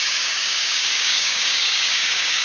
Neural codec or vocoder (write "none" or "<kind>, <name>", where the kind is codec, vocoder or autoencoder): codec, DAC